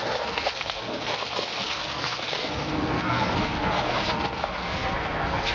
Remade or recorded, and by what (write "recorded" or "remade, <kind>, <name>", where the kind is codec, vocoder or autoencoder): remade, codec, SNAC